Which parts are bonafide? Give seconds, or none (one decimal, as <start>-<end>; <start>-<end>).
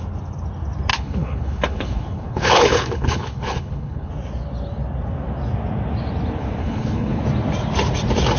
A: 0.0-0.9; 4.1-6.6; 7.2-8.4